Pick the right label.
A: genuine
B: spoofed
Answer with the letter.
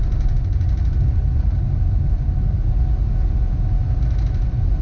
A